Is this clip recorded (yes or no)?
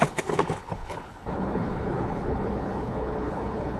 no